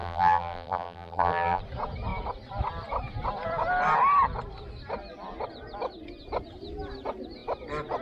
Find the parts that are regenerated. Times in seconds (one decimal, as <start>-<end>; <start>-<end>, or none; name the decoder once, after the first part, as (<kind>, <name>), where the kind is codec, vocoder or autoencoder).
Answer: 0.0-1.6 (vocoder, BigVGAN v2)